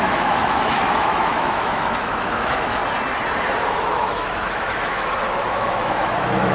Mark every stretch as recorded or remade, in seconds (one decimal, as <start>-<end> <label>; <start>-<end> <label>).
0.0-2.8 remade; 2.8-3.7 recorded; 3.7-6.5 remade